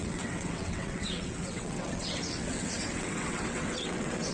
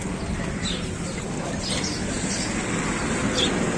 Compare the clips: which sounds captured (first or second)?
second